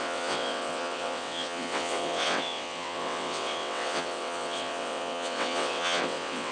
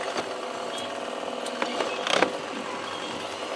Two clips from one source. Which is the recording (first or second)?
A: second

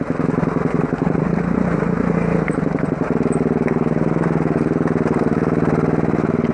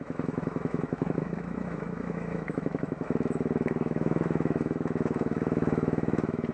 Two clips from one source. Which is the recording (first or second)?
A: first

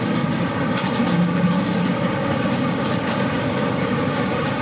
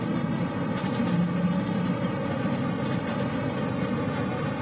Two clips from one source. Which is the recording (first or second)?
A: second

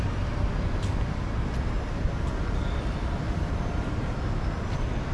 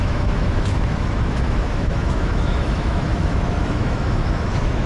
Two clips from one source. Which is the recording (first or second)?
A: first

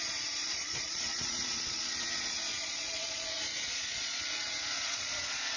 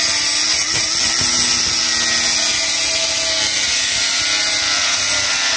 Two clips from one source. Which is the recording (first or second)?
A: second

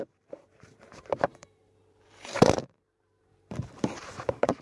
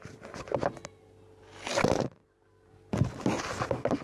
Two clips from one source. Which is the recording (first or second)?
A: second